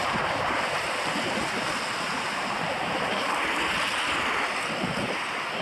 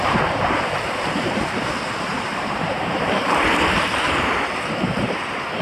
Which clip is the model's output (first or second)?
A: second